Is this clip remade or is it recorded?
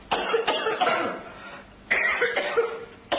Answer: recorded